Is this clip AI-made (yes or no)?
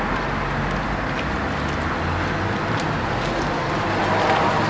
no